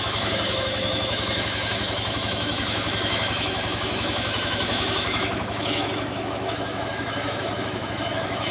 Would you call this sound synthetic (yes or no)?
yes